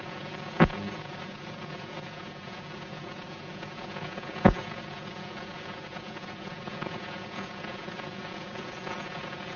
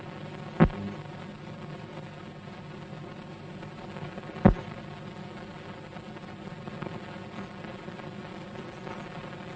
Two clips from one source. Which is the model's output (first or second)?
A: first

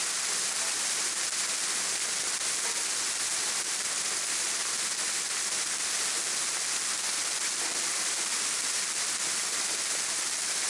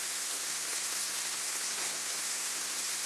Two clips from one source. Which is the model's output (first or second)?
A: second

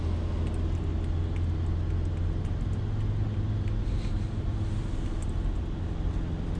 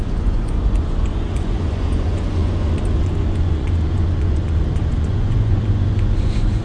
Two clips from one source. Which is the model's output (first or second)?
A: second